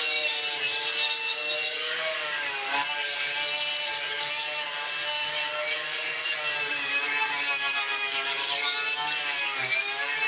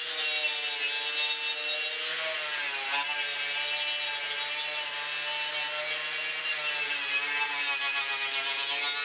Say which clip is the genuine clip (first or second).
second